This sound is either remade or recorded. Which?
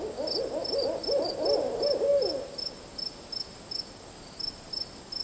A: recorded